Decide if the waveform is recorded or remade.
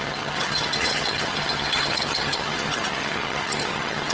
remade